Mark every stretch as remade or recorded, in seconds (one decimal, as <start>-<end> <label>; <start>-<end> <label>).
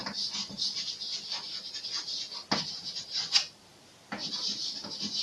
0.0-5.2 recorded